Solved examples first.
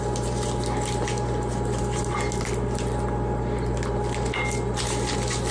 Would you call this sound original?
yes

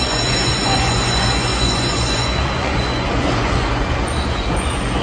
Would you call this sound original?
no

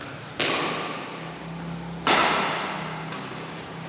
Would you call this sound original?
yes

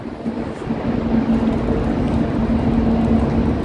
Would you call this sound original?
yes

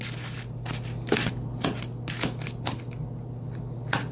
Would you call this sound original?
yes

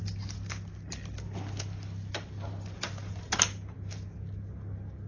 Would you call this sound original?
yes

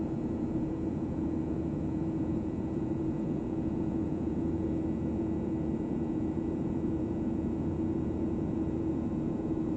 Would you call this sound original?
no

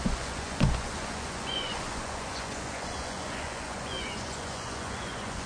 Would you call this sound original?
no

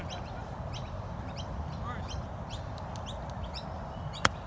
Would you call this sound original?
yes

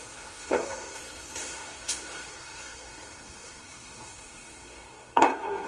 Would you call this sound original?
no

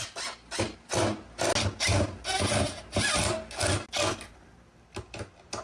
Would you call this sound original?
yes